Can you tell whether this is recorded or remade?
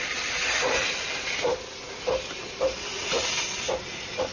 recorded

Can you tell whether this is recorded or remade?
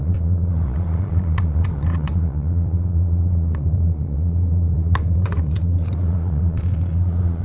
remade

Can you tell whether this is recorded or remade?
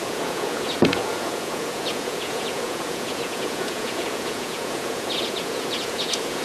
remade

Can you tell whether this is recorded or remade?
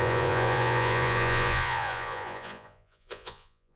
remade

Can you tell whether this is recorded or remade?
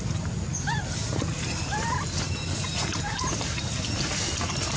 recorded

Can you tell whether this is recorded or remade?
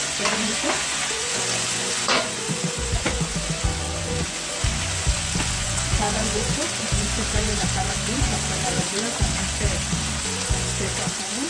remade